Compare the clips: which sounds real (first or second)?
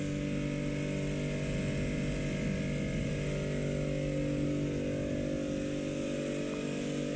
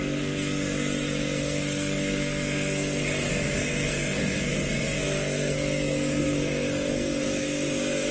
first